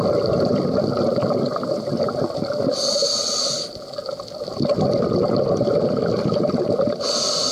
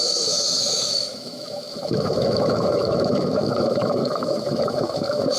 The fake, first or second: second